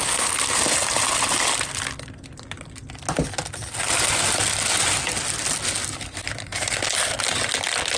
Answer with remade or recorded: recorded